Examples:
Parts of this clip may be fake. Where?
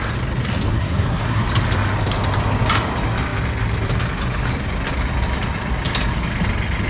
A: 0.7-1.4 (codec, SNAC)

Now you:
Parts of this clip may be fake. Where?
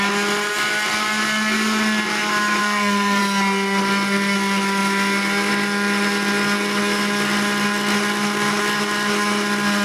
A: 2.6-3.2 (codec, SNAC)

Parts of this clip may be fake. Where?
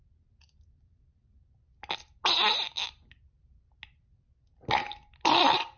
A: none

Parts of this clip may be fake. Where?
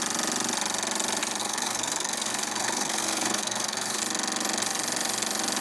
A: 1.4-4.0 (codec, SNAC)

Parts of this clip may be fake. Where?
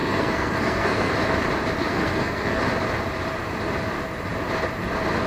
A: 0.0-1.1 (codec, SNAC); 1.8-2.6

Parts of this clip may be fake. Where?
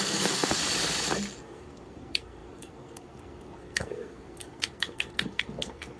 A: 0.0-0.6 (codec, SNAC); 1.4-6.0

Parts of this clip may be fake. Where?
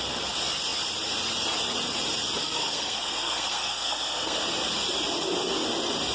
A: 2.4-4.4 (codec, SNAC)